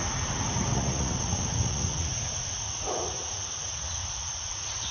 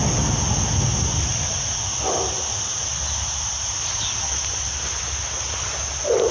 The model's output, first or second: first